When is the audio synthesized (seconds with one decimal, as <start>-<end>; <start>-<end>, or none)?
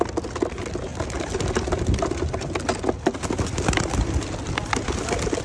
none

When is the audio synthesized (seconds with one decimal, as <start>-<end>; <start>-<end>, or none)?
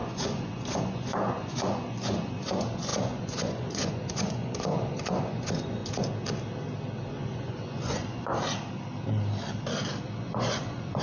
0.0-5.8; 7.1-8.3; 10.2-11.0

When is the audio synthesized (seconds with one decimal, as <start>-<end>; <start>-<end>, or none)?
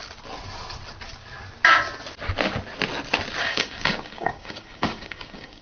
3.4-5.6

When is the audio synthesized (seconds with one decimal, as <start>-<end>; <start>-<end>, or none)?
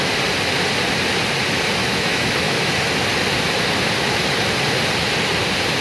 1.8-2.7